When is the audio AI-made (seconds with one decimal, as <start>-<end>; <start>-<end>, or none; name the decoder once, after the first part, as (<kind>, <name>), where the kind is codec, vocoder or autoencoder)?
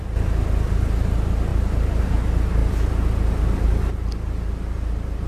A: 1.5-2.0 (vocoder, BigVGAN v2)